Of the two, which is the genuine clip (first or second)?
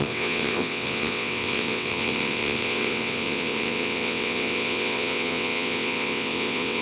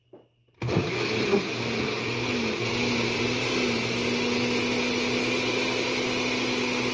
second